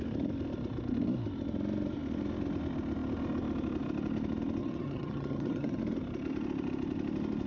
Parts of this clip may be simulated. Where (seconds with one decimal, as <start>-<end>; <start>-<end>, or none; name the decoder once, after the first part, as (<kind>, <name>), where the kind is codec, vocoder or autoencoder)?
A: 4.6-5.8 (vocoder, HiFi-GAN)